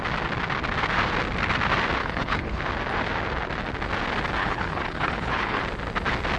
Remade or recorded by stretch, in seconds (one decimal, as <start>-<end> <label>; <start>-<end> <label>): 0.0-2.0 recorded; 2.0-2.6 remade; 2.6-4.4 recorded; 4.4-5.6 remade; 5.6-6.4 recorded